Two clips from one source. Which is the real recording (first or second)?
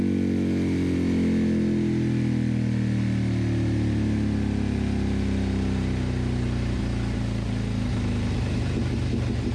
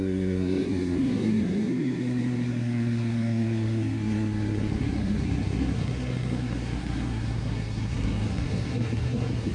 first